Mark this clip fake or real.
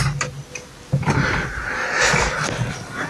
real